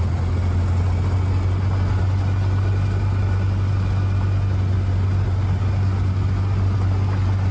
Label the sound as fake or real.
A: real